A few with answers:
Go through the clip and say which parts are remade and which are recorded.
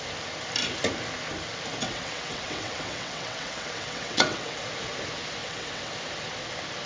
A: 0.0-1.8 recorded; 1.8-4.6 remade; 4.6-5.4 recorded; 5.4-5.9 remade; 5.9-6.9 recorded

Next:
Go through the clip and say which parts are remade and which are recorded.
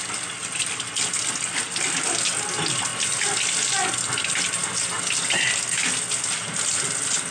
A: 0.0-7.3 recorded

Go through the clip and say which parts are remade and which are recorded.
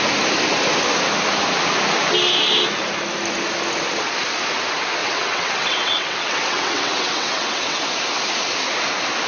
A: 0.0-5.0 recorded; 5.0-7.9 remade; 7.9-9.3 recorded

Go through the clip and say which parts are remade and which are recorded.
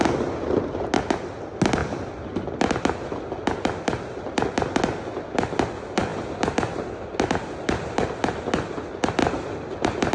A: 0.0-10.1 recorded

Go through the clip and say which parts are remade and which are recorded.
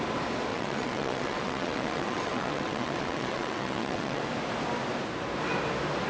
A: 0.0-0.5 recorded; 0.5-4.2 remade; 4.2-6.1 recorded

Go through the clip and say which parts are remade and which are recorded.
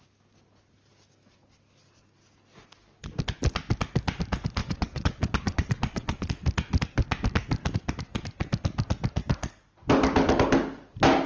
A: 0.0-4.6 recorded; 4.6-6.3 remade; 6.3-11.3 recorded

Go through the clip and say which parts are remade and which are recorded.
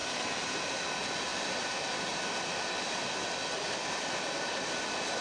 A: 0.0-5.2 recorded